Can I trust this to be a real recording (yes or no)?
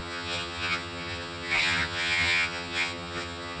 no